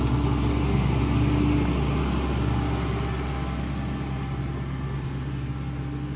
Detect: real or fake real